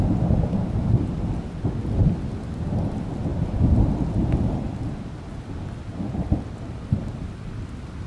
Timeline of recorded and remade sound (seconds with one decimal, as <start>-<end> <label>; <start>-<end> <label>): 0.0-3.3 recorded; 3.3-4.6 remade; 4.6-8.1 recorded